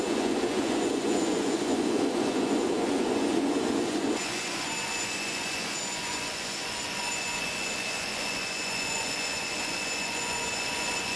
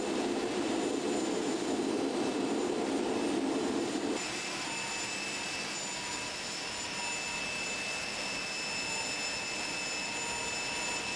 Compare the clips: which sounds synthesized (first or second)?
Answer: first